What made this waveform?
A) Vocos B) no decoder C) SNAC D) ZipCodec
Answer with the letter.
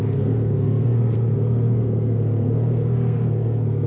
C